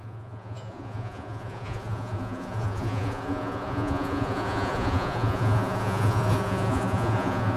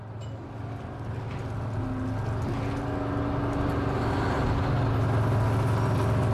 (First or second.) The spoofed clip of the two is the first